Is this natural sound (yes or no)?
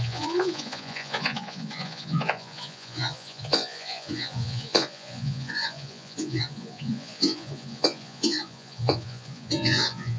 no